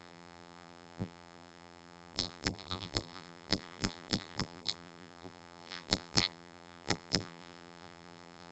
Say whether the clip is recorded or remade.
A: remade